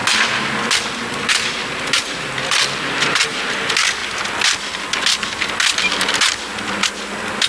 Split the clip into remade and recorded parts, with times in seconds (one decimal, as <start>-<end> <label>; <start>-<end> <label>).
0.0-7.5 recorded